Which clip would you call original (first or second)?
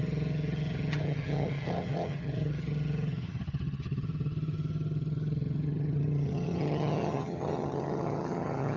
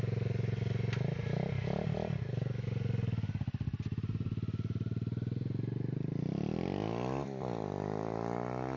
second